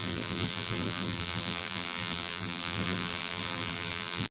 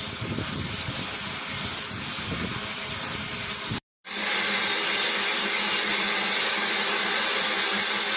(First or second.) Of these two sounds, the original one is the second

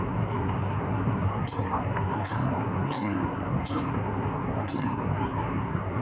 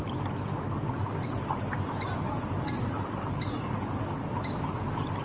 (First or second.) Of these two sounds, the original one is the second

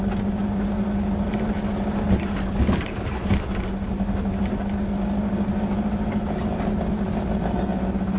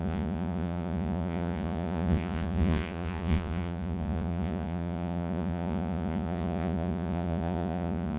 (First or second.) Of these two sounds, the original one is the first